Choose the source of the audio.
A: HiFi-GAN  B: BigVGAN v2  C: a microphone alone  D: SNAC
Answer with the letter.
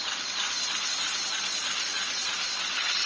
C